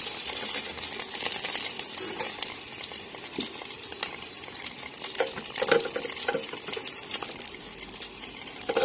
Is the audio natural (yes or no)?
yes